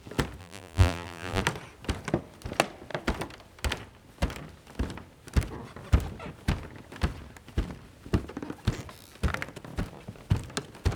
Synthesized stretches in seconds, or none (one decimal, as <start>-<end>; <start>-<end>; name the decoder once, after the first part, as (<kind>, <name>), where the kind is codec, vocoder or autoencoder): 0.4-1.4 (vocoder, BigVGAN v2)